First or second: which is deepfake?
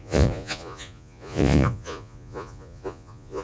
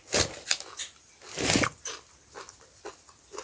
first